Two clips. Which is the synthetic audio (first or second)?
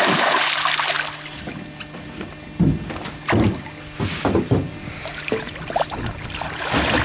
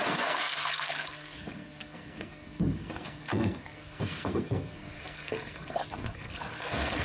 second